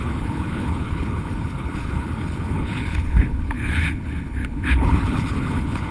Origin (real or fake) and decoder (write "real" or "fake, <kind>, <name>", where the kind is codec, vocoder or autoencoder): fake, codec, HILCodec